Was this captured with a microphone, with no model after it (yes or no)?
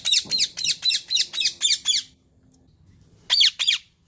yes